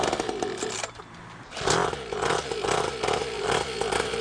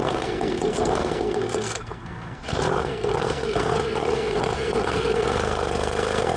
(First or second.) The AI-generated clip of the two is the second